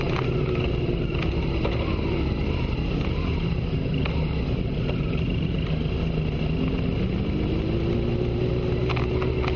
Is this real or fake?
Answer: real